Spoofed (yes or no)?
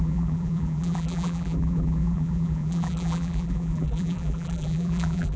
yes